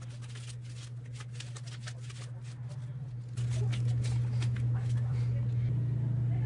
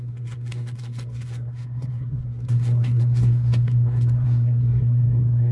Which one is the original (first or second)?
first